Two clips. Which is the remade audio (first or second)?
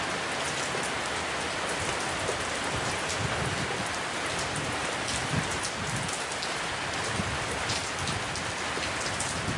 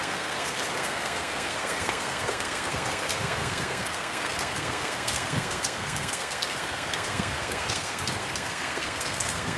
second